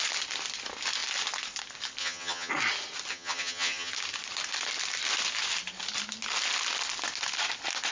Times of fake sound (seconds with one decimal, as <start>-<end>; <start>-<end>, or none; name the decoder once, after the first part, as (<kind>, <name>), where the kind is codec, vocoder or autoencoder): 2.0-2.5 (vocoder, HiFi-GAN); 3.1-3.9